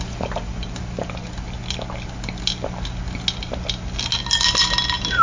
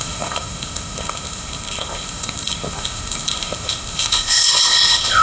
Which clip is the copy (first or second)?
second